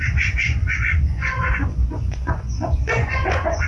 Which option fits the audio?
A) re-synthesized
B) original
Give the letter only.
A